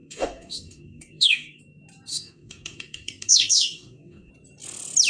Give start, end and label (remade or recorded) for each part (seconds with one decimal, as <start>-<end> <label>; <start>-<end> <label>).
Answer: 0.0-1.6 remade; 1.6-2.1 recorded; 2.1-4.3 remade; 4.3-5.1 recorded